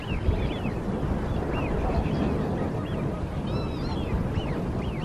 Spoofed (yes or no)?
no